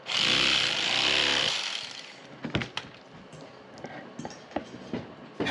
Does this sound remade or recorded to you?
recorded